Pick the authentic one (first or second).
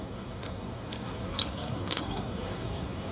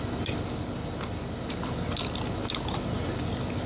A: second